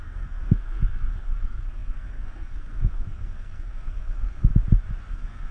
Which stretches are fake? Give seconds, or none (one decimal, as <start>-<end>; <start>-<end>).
0.0-4.5; 5.1-5.5

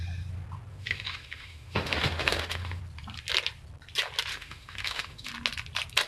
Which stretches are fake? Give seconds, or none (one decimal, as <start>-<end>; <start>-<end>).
0.7-2.8; 4.3-5.3